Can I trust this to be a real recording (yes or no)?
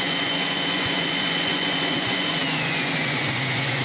no